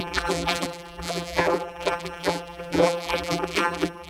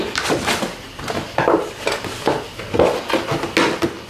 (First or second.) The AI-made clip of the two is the first